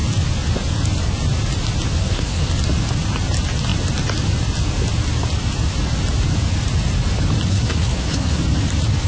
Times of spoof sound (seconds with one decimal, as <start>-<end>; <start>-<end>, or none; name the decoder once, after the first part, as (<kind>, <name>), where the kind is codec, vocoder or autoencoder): 2.0-2.5 (codec, SNAC); 7.5-8.4